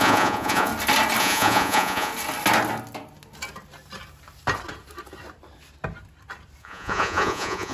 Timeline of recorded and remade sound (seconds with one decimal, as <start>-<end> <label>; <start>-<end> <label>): 0.0-0.7 remade; 0.7-1.2 recorded; 1.2-2.1 remade; 2.1-6.6 recorded; 6.6-7.7 remade